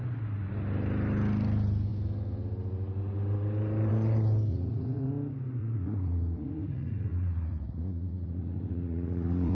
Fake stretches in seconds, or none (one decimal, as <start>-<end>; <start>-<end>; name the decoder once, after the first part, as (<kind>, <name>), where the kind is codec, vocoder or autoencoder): 4.5-5.1 (vocoder, Vocos); 5.6-9.5

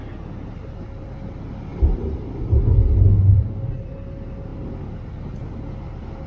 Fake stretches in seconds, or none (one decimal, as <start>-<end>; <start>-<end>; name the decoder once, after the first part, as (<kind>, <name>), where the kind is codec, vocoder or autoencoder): none

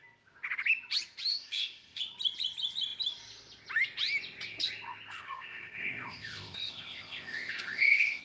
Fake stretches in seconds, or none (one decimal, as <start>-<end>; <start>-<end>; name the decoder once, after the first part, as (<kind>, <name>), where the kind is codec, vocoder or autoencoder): 1.3-2.0 (codec, ZipCodec); 5.1-8.2

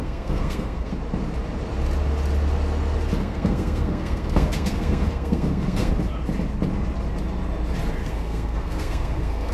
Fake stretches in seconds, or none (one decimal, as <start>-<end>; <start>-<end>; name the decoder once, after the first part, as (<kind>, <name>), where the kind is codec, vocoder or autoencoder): 0.0-0.9 (codec, SNAC); 3.2-5.9; 8.0-9.5

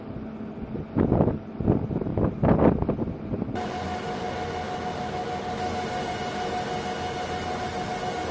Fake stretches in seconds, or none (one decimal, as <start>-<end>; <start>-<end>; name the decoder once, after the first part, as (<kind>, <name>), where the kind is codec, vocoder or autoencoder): none

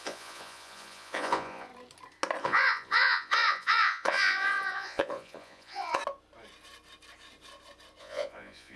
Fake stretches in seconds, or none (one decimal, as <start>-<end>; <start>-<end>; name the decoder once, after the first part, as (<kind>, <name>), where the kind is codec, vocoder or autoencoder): 0.0-1.7 (vocoder, Vocos); 2.4-6.0; 8.0-8.8

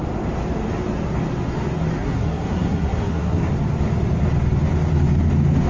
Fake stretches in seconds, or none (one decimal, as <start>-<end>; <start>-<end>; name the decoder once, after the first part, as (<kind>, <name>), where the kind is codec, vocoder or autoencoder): 2.0-3.5 (codec, SNAC)

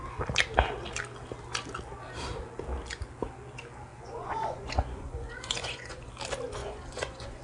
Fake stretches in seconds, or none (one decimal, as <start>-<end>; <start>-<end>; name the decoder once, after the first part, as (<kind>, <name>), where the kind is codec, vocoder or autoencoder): 3.9-6.1 (vocoder, Vocos); 6.6-7.4